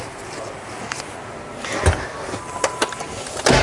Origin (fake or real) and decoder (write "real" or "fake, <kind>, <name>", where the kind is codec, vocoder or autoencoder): real